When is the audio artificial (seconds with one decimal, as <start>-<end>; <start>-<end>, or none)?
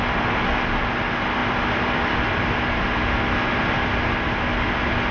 none